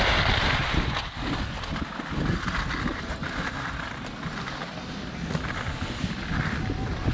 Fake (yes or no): no